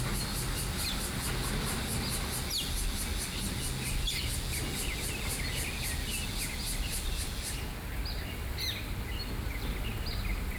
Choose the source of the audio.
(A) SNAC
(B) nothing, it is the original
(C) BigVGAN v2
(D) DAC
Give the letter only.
B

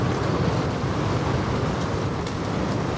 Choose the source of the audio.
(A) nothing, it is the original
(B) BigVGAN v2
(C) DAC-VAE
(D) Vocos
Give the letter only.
B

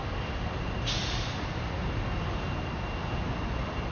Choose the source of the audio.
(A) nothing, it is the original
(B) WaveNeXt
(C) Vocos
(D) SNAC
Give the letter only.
A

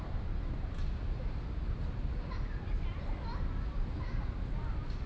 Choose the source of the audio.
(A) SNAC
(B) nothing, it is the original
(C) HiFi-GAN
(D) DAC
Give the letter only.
B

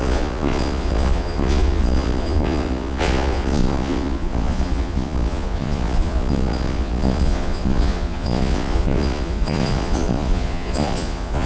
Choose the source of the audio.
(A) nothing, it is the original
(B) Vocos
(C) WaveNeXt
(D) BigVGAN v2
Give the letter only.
B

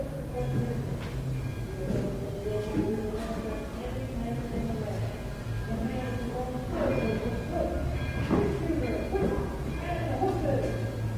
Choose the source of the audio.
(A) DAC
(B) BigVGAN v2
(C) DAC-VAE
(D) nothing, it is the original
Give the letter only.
D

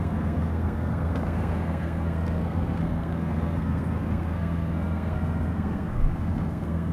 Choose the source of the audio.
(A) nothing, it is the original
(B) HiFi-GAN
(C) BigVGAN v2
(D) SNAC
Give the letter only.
D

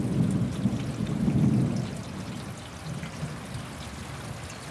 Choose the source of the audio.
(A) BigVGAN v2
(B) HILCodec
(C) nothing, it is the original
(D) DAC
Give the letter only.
C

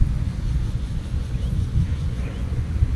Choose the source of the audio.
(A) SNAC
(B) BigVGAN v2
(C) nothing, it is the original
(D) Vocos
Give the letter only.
D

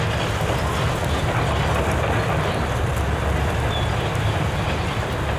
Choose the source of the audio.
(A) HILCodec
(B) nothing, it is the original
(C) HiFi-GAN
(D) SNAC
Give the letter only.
B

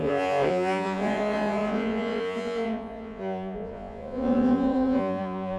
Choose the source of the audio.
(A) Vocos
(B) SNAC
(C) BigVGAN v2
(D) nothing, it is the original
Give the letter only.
A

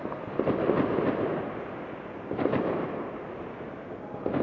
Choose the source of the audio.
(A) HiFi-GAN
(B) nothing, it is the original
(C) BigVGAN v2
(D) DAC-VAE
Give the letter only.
B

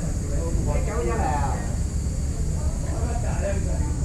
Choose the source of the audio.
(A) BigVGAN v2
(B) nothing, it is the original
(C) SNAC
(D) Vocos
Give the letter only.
B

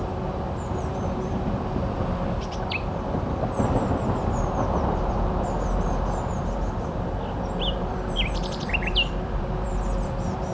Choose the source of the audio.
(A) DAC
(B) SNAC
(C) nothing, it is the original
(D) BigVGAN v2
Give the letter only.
D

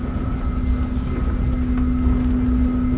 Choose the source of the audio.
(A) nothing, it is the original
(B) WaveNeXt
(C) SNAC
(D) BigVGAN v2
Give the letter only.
A